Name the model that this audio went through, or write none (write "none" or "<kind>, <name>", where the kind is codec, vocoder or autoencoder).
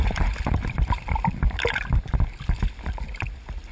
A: none